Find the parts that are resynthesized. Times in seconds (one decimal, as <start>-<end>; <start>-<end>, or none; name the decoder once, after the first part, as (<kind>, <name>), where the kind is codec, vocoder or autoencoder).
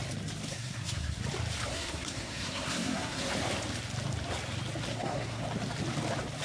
0.5-1.2 (codec, SNAC); 1.7-3.3; 4.9-5.4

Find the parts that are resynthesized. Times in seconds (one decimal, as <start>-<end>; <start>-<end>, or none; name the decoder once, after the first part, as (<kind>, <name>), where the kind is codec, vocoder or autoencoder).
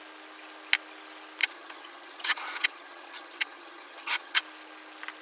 1.4-4.4 (vocoder, HiFi-GAN)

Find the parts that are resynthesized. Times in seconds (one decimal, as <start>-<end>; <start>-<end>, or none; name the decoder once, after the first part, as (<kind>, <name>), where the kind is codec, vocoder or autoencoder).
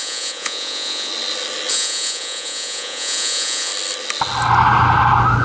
0.0-1.1 (vocoder, Vocos); 1.7-3.7